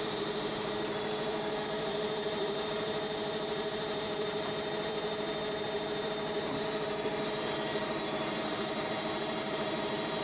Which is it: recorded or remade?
remade